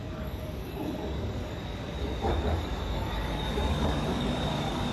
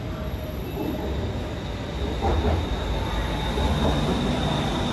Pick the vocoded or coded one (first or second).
first